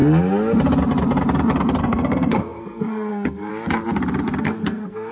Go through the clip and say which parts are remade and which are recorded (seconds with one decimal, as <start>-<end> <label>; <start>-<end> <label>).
0.0-1.8 recorded; 1.8-3.5 remade; 3.5-4.4 recorded; 4.4-5.1 remade